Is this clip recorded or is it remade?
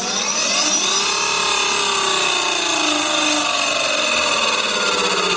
recorded